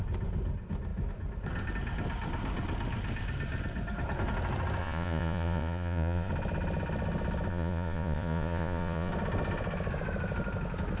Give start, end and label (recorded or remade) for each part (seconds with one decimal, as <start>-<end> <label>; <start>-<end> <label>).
0.0-4.8 recorded; 4.8-6.3 remade; 6.3-7.5 recorded; 7.5-9.1 remade; 9.1-11.0 recorded